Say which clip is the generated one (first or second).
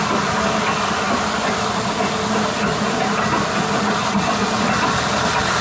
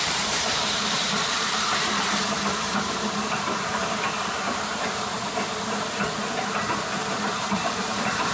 second